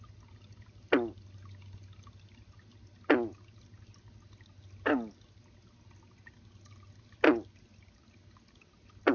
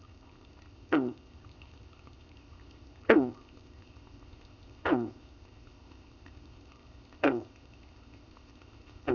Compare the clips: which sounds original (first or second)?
first